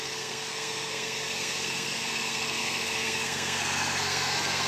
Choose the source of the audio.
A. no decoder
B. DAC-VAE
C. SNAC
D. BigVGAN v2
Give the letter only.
C